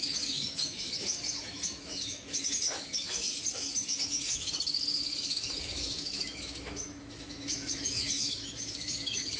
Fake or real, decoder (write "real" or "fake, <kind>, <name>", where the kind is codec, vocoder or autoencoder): fake, autoencoder, DAC-VAE